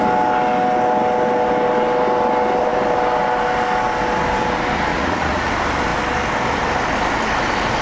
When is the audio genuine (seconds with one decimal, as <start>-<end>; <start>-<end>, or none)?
0.0-4.9; 5.5-7.8